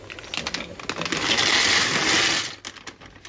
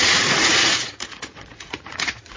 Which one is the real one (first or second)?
first